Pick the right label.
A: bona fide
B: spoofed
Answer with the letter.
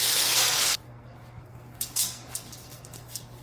B